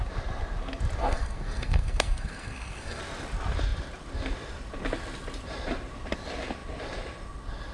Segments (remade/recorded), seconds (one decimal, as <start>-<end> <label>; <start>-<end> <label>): 0.0-1.0 recorded; 1.0-3.0 remade; 3.0-7.7 recorded